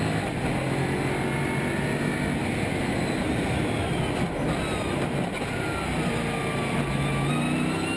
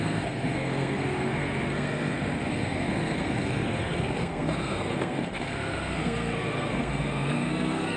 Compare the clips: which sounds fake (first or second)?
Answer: second